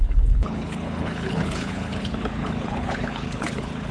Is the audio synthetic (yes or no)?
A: yes